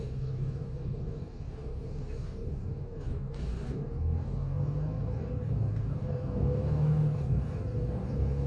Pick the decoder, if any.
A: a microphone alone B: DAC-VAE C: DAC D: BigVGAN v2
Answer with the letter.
C